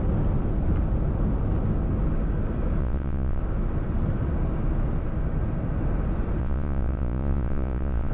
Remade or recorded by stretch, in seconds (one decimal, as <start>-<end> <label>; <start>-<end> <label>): 0.0-2.8 recorded; 2.8-3.4 remade; 3.4-6.4 recorded; 6.4-8.1 remade